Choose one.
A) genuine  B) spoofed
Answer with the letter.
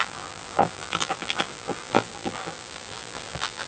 B